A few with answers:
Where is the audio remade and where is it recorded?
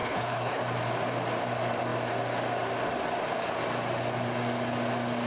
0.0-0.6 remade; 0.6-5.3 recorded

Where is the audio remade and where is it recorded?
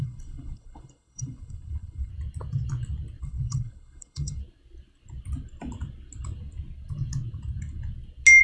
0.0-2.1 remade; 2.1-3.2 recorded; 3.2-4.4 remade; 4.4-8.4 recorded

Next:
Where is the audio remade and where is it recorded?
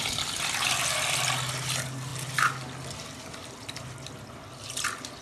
0.0-5.2 recorded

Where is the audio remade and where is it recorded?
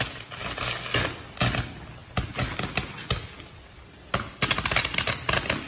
0.0-5.7 recorded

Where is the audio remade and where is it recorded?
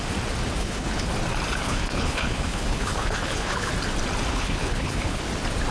0.0-0.6 recorded; 0.6-1.1 remade; 1.1-1.6 recorded; 1.6-3.7 remade; 3.7-4.3 recorded; 4.3-5.2 remade; 5.2-5.7 recorded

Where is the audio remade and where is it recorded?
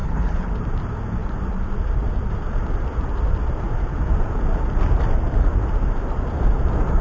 0.0-0.5 remade; 0.5-7.0 recorded